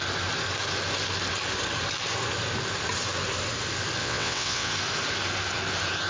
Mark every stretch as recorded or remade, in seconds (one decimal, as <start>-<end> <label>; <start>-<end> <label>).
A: 0.0-4.0 recorded; 4.0-4.7 remade; 4.7-6.1 recorded